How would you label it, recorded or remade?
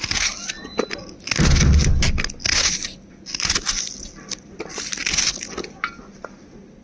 recorded